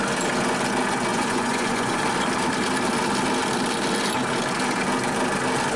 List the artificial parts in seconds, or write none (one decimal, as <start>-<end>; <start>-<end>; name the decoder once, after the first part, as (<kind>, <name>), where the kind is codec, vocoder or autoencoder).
1.1-2.0 (vocoder, Vocos)

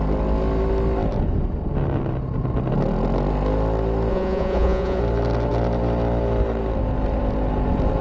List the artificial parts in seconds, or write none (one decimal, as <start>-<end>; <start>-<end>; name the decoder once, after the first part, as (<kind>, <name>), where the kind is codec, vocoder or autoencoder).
4.1-5.0 (vocoder, Vocos)